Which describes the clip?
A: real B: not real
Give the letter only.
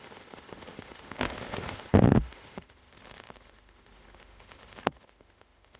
B